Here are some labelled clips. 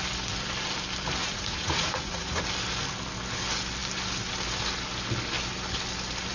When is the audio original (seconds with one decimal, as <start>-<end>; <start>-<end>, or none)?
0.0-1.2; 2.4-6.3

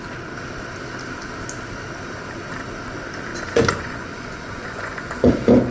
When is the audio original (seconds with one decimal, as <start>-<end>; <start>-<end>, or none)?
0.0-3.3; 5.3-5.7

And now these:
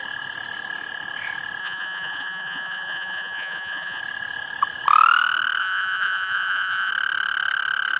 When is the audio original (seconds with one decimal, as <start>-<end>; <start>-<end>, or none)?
0.0-1.6; 4.0-5.6; 6.9-8.0

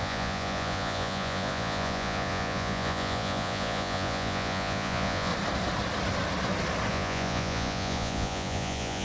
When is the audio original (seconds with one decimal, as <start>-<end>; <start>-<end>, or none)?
5.3-6.9

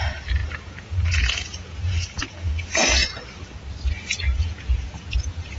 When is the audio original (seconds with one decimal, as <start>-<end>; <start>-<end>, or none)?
3.0-3.9

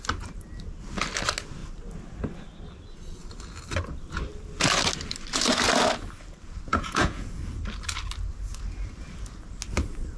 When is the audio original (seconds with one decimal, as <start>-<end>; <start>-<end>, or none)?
0.0-6.7; 7.4-10.2